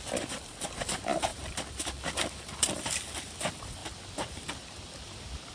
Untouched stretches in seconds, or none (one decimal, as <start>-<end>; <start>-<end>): 0.0-5.5